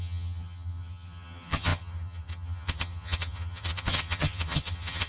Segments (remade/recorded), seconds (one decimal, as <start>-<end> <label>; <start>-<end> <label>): 0.0-5.1 remade